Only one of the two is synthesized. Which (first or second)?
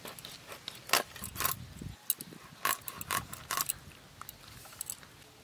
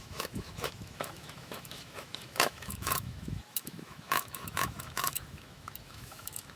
second